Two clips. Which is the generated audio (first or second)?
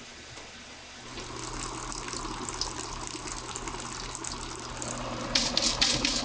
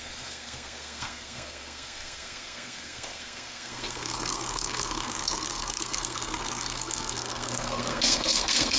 second